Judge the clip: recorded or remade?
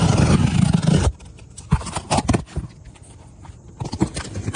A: remade